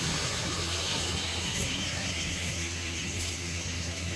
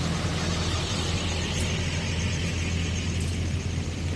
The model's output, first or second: first